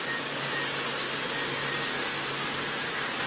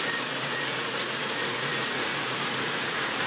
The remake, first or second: second